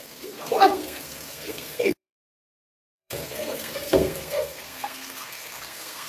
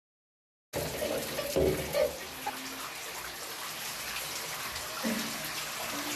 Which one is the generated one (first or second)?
first